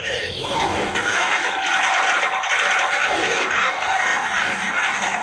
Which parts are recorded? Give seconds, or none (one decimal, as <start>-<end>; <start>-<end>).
1.4-2.9

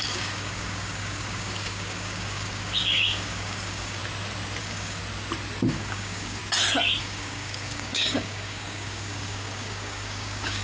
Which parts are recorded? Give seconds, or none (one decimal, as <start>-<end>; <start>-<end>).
4.0-4.6; 5.0-5.7; 6.4-7.0

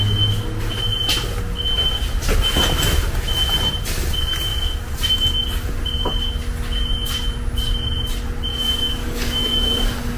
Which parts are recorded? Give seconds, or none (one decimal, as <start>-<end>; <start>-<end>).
0.0-8.5

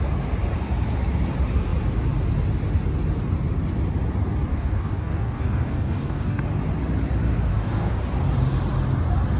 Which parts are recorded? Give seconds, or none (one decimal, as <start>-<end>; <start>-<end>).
0.0-4.5; 6.4-7.5; 8.0-9.4

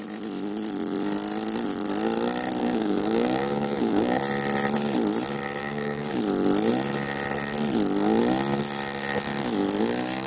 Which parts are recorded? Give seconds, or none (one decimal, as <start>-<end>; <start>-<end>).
0.0-2.6; 4.2-5.6; 6.1-10.3

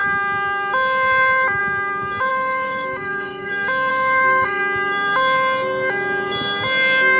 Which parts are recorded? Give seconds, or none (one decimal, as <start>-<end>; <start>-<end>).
0.0-2.3; 3.5-3.9; 4.6-7.2

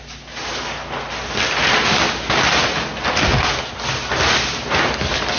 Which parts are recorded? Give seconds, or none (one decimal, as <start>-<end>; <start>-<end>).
0.0-5.4

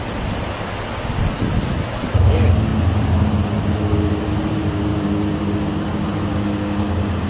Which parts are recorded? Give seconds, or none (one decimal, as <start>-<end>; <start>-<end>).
0.0-6.3